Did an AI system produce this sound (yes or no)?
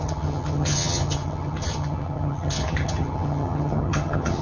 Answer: yes